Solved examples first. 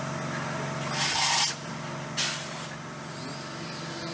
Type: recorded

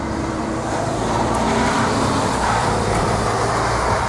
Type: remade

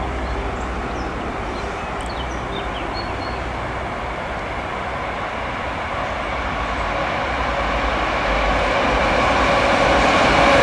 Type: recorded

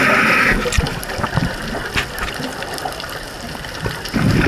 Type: remade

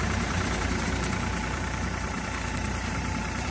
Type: remade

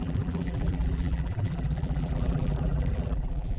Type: remade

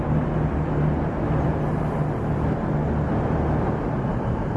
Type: recorded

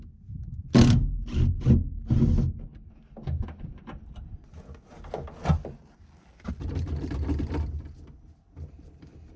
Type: recorded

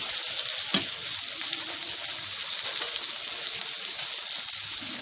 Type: recorded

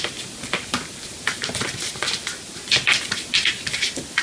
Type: recorded